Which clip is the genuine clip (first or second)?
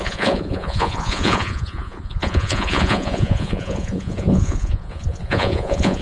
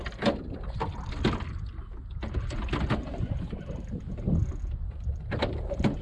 second